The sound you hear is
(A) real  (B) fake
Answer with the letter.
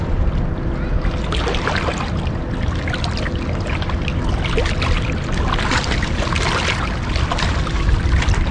A